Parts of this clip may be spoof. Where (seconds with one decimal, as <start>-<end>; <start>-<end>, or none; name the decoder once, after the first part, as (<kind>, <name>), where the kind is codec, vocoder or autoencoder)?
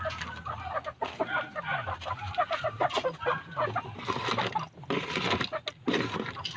none